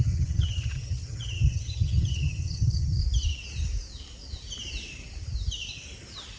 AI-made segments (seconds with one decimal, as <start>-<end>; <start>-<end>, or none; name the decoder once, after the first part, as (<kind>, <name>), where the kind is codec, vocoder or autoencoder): 0.0-3.0 (vocoder, HiFi-GAN)